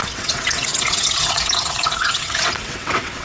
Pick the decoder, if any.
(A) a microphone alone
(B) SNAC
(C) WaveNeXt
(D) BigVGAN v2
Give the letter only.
C